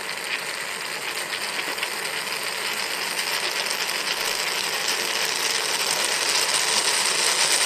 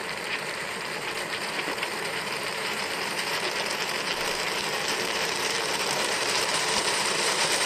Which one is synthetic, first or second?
second